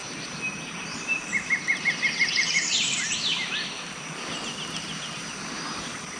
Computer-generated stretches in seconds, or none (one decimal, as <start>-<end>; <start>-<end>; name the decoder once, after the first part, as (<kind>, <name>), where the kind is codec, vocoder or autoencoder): 0.0-3.7 (vocoder, BigVGAN v2); 5.2-6.2